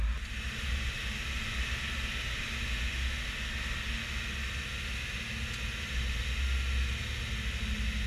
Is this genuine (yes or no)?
yes